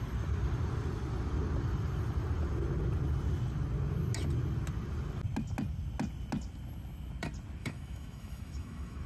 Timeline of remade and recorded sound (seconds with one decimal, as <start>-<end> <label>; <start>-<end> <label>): 0.0-7.6 recorded; 7.6-9.1 remade